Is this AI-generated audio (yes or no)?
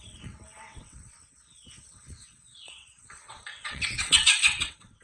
yes